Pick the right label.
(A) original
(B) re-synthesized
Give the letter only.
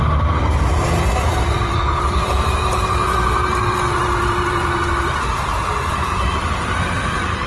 B